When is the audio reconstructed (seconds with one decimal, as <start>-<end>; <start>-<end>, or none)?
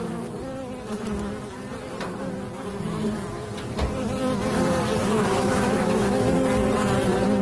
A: 5.0-6.1